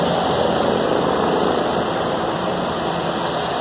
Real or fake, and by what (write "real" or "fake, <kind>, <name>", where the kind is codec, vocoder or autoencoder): real